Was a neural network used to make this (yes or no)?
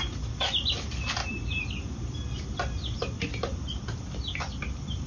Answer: no